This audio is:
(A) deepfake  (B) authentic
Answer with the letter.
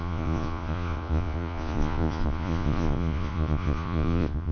A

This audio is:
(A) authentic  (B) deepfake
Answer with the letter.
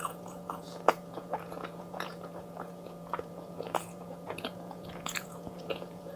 B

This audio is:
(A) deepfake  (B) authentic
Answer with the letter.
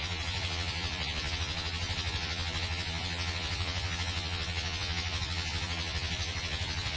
A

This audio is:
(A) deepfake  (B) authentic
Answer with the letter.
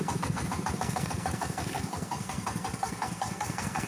A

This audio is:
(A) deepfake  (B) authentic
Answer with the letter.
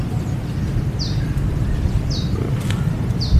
B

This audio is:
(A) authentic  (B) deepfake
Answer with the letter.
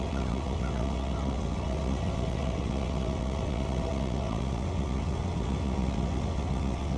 B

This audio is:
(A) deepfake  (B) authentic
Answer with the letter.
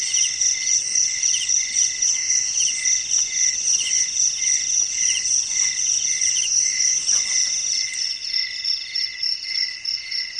A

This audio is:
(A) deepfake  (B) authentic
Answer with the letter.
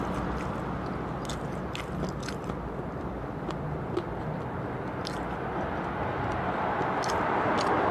B